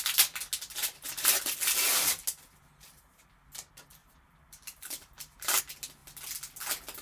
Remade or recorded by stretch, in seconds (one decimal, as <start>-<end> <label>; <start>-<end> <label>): 0.0-0.8 recorded; 0.8-1.4 remade; 1.4-4.0 recorded; 4.0-5.6 remade; 5.6-7.0 recorded